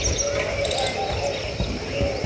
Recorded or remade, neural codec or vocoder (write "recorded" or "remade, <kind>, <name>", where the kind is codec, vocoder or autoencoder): recorded